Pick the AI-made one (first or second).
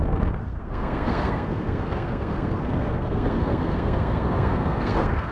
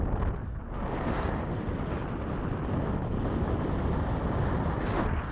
first